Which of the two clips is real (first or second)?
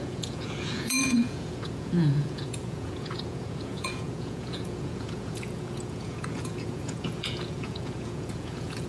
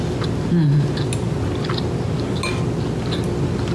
second